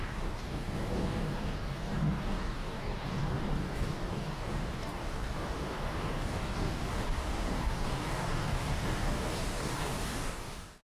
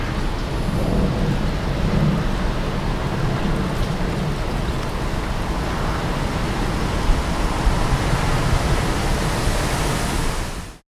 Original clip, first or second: second